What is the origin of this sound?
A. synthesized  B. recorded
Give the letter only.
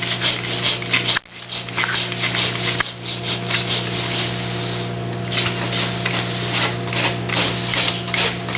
B